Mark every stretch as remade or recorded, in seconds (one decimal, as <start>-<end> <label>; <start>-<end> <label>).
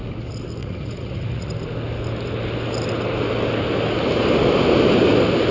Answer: 0.0-0.6 recorded; 0.6-1.5 remade; 1.5-5.5 recorded